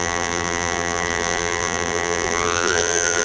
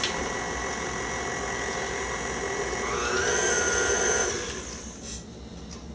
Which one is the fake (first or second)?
first